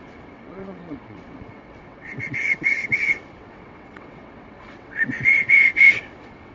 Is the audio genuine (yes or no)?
no